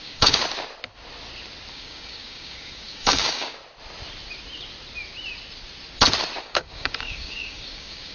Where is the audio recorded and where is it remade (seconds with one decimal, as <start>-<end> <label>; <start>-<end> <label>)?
0.0-0.4 remade; 0.4-1.7 recorded; 1.7-3.6 remade; 3.6-6.4 recorded; 6.4-8.1 remade